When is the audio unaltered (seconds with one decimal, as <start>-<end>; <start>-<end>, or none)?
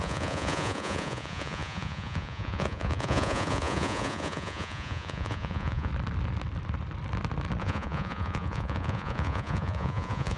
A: 5.9-7.6